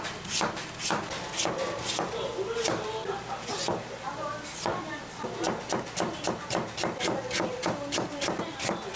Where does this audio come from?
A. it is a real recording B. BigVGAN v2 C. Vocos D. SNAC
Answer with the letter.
A